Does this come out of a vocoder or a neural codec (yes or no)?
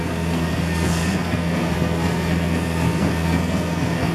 yes